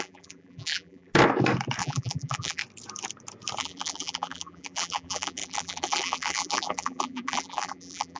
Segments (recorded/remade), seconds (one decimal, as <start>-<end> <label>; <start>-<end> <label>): 0.0-1.1 remade; 1.1-1.8 recorded; 1.8-2.6 remade; 2.6-3.6 recorded; 3.6-8.2 remade